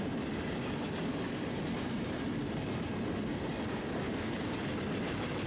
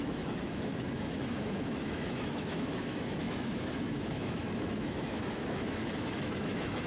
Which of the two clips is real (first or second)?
first